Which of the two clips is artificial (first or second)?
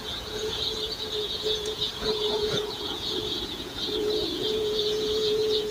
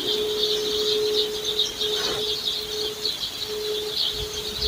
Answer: first